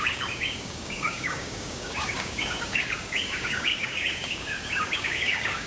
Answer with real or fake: fake